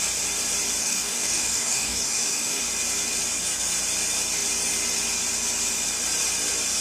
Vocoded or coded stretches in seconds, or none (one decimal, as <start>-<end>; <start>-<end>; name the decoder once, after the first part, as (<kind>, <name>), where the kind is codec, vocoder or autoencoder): 0.8-2.6 (codec, DAC)